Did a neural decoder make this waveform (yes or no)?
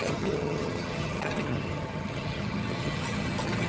yes